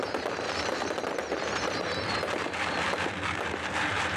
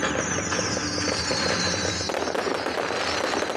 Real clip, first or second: second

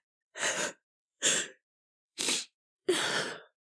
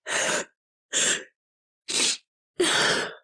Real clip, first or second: second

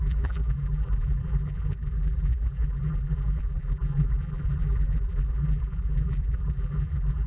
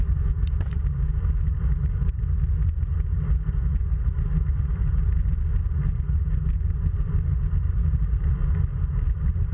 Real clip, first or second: second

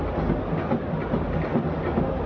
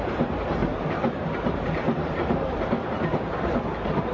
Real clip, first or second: first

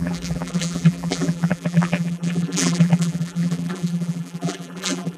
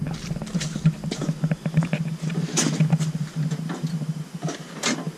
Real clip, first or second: second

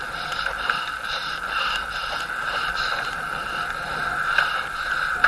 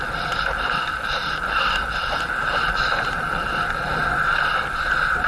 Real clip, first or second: first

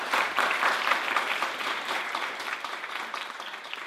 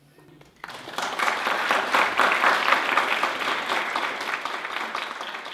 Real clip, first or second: second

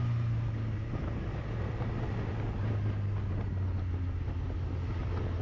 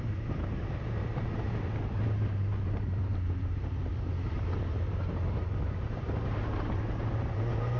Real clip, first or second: first